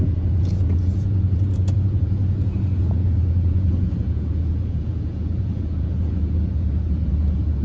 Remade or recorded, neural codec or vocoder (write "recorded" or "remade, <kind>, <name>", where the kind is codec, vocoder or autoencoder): remade, vocoder, Vocos